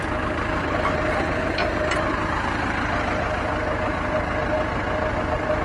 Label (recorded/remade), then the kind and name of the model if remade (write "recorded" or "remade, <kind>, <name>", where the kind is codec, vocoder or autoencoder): recorded